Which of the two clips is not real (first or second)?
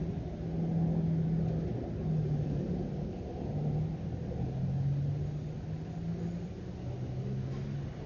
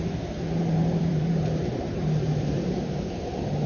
second